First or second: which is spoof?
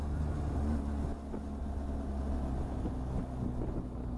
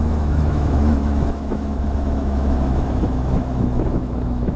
second